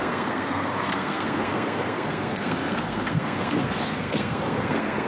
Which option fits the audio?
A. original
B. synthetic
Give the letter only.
B